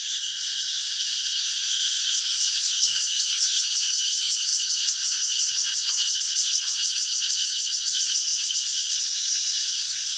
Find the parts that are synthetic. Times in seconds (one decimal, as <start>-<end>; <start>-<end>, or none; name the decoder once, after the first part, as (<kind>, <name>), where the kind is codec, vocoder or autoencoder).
0.0-10.2 (codec, SNAC)